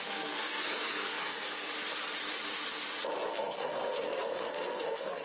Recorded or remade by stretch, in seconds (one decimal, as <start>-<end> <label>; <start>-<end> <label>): 0.0-1.7 remade; 1.7-3.3 recorded; 3.3-5.2 remade